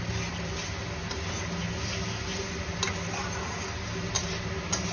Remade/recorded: recorded